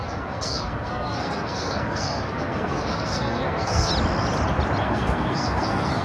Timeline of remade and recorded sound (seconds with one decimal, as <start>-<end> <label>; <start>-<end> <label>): 0.0-3.9 remade; 3.9-4.8 recorded; 4.8-6.0 remade